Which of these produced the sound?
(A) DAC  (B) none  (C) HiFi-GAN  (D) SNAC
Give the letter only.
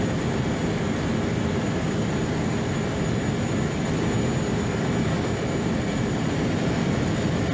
B